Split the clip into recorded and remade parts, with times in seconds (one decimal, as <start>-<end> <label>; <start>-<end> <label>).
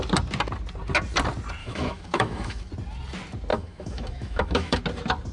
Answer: 0.0-1.6 recorded; 1.6-2.7 remade; 2.7-3.5 recorded; 3.5-4.8 remade; 4.8-5.3 recorded